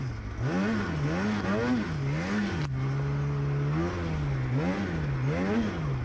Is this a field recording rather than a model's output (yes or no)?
yes